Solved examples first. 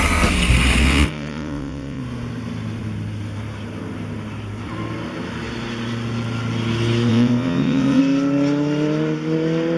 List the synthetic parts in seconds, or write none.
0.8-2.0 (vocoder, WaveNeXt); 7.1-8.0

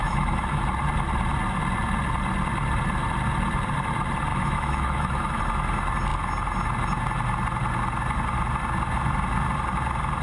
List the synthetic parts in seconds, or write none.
0.0-0.6 (autoencoder, DAC-VAE); 4.3-5.4

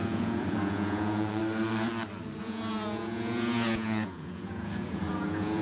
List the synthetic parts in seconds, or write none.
0.0-1.4 (vocoder, Vocos); 2.4-5.6